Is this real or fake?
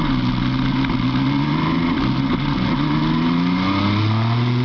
real